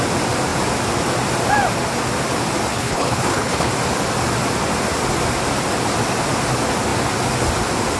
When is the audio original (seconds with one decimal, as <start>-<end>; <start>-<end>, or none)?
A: 0.0-2.7; 3.7-8.0